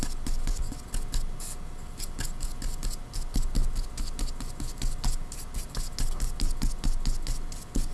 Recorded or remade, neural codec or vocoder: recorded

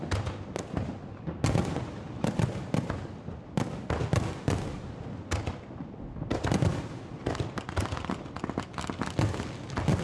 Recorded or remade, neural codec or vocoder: recorded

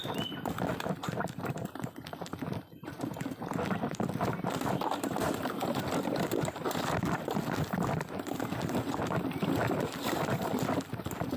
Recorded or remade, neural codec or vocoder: recorded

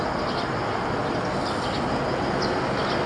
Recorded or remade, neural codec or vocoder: recorded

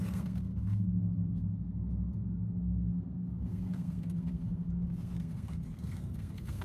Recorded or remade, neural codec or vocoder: remade, codec, SNAC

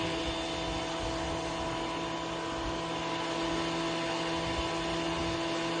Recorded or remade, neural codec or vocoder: recorded